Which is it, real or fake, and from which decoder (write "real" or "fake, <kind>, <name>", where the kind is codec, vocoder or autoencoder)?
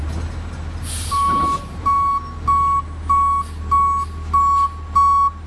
real